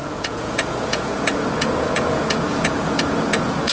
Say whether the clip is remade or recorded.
remade